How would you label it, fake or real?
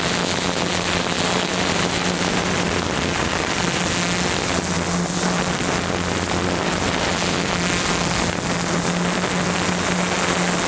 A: real